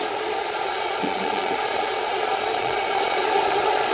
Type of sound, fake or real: fake